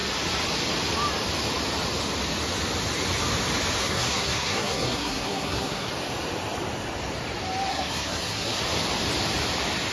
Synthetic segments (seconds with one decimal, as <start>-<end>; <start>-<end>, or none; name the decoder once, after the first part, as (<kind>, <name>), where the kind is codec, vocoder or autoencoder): 3.8-5.9 (codec, SNAC); 7.7-8.6